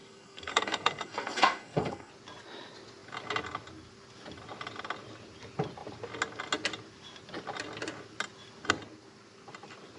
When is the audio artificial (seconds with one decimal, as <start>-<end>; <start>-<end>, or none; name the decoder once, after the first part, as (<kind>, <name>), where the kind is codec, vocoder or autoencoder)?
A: 0.0-2.1 (codec, SNAC)